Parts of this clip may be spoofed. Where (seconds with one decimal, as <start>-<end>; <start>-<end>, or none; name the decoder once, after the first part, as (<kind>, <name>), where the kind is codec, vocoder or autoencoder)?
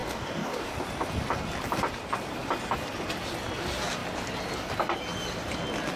0.0-0.7 (codec, DAC)